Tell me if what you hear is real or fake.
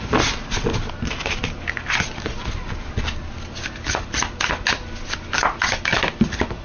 real